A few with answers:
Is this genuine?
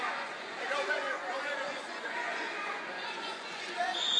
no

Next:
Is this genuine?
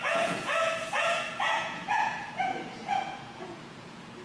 no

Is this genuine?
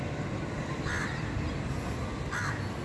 yes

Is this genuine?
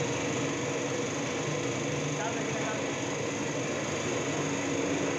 yes